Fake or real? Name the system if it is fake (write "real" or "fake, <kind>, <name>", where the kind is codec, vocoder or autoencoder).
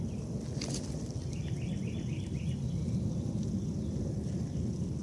real